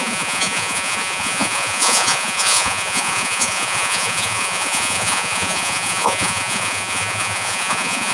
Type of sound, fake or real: fake